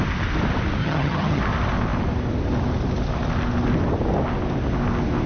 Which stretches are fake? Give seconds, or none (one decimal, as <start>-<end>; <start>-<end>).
0.8-1.4